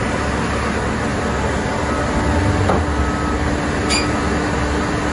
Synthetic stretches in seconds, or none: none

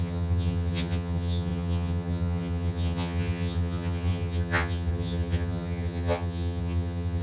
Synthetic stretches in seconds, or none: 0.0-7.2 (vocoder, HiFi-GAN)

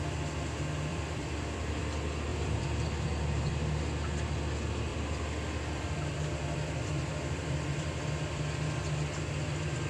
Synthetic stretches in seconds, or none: 0.9-1.8 (vocoder, BigVGAN v2); 2.3-3.5; 4.9-8.4

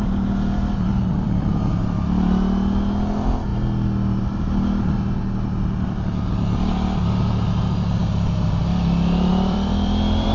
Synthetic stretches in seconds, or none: 1.1-1.8 (vocoder, BigVGAN v2); 9.3-10.3